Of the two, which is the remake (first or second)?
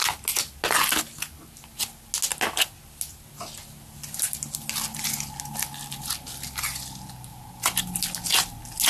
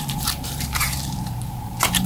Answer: second